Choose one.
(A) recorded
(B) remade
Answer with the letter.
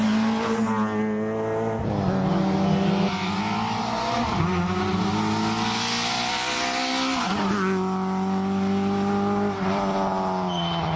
A